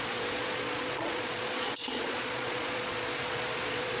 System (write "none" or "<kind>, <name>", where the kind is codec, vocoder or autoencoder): vocoder, Vocos